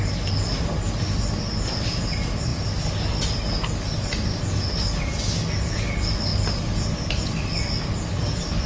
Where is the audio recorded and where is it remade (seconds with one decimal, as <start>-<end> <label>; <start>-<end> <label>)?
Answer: 0.0-8.7 recorded